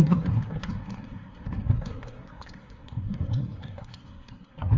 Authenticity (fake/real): fake